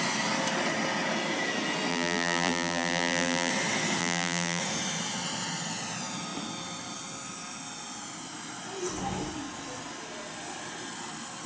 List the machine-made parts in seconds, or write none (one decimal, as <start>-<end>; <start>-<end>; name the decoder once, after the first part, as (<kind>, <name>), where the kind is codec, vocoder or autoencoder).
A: 1.9-3.5 (vocoder, BigVGAN v2); 4.0-4.6